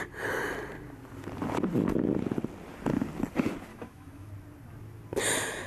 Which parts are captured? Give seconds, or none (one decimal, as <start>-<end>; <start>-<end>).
0.0-3.7; 4.3-5.7